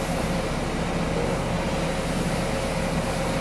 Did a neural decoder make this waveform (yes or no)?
no